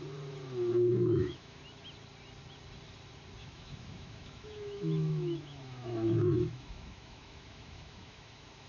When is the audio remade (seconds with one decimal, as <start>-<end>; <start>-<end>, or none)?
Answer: 0.9-1.6; 3.4-8.7